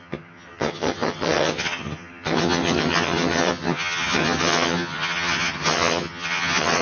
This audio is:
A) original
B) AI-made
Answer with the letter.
B